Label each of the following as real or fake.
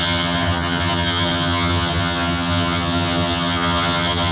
fake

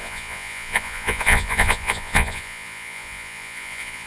fake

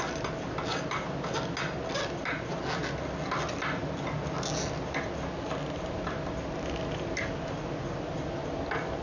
real